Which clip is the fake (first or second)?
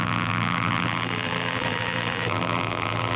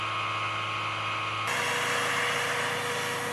first